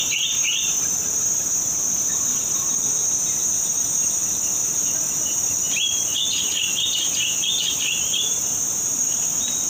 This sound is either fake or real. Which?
fake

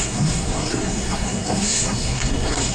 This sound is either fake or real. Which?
fake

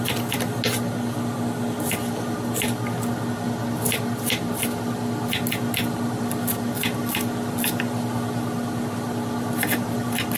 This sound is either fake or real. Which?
real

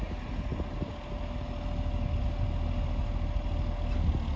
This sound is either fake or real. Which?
real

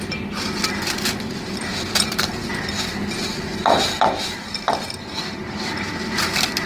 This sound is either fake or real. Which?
real